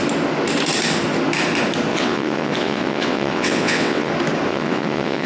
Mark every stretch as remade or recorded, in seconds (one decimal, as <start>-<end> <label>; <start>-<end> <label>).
0.0-1.9 recorded; 1.9-4.1 remade; 4.1-4.5 recorded; 4.5-5.3 remade